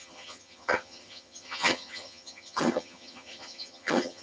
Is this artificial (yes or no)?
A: yes